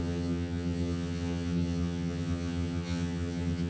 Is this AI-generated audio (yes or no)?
yes